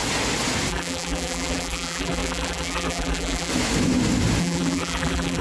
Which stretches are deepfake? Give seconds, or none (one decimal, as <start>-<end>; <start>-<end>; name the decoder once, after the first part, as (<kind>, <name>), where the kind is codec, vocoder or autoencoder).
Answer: 0.7-3.5 (vocoder, BigVGAN v2); 4.4-5.4